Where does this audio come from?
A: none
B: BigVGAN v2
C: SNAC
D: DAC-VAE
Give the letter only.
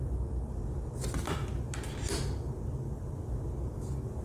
A